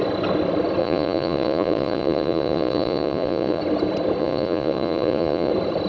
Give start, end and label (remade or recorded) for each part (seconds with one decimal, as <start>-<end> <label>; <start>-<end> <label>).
0.0-0.8 recorded; 0.8-3.6 remade; 3.6-4.2 recorded; 4.2-5.5 remade; 5.5-5.9 recorded